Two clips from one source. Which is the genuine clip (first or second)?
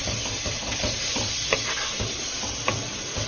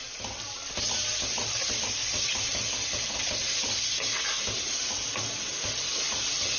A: second